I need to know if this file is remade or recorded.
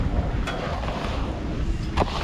recorded